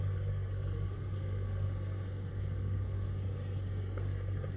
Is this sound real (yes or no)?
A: no